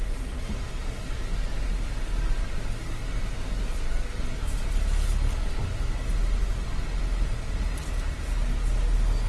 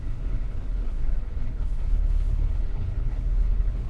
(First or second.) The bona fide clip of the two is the first